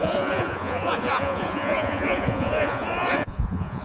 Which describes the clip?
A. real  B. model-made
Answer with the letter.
B